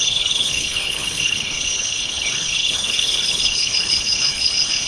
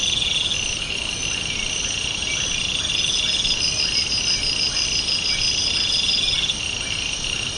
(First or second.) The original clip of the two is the second